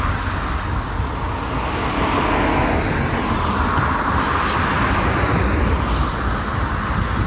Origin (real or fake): real